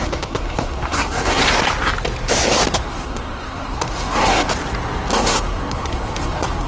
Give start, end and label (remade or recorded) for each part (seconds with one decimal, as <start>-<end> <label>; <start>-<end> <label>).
0.0-1.4 remade; 1.4-2.8 recorded; 2.8-4.5 remade; 4.5-5.1 recorded; 5.1-6.7 remade